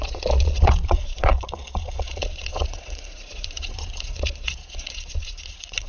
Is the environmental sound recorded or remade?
remade